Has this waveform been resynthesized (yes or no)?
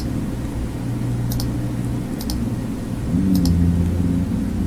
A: no